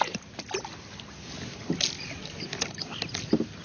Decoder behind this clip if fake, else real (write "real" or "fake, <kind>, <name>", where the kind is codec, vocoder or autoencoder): real